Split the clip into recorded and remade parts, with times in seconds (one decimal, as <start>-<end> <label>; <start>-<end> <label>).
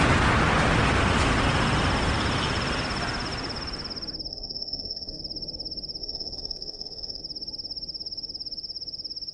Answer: 0.0-4.3 recorded; 4.3-5.2 remade; 5.2-6.0 recorded; 6.0-7.2 remade; 7.2-9.3 recorded